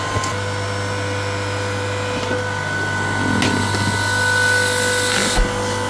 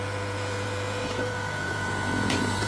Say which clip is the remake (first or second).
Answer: second